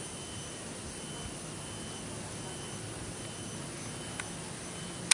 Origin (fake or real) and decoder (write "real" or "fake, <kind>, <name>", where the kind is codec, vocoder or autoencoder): real